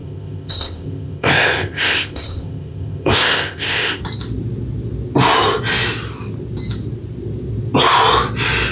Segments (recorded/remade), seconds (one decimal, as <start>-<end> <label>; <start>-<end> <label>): 0.0-4.0 remade; 4.0-8.7 recorded